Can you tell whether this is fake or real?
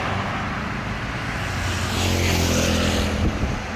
real